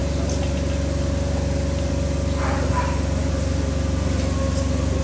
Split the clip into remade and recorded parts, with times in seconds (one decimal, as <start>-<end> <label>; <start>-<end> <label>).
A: 0.0-5.0 recorded